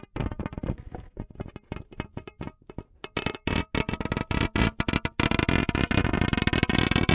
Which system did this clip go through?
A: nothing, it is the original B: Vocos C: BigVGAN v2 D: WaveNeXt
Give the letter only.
A